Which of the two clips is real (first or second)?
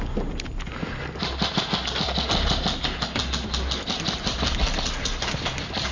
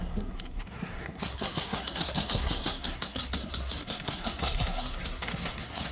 first